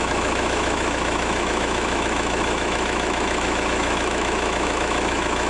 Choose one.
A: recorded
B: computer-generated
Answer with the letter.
B